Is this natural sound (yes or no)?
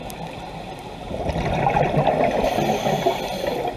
yes